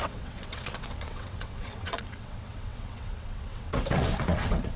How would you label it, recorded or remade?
remade